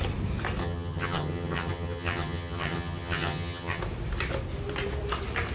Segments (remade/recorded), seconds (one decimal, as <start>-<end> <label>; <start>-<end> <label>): 0.0-0.6 recorded; 0.6-3.8 remade; 3.8-5.5 recorded